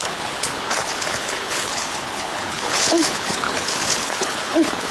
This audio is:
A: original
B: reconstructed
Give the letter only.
B